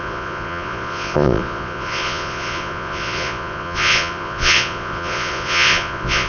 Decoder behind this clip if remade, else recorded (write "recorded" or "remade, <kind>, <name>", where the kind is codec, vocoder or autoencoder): remade, vocoder, Vocos